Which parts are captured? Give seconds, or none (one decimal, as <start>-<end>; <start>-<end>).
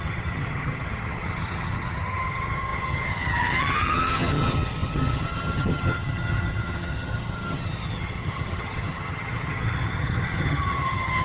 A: none